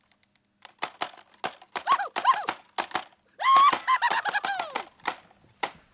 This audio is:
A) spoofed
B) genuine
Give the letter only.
B